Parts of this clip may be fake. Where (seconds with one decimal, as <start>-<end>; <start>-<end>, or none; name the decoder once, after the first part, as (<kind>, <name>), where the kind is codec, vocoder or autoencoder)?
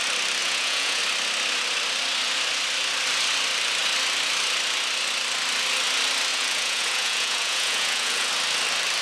0.4-1.0 (vocoder, Vocos); 6.3-8.3